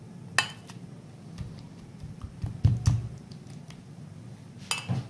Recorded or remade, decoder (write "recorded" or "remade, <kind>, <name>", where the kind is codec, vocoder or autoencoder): recorded